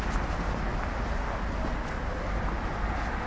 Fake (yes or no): no